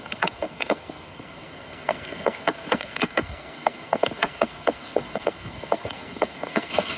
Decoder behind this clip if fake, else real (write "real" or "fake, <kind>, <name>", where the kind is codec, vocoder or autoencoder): fake, codec, SNAC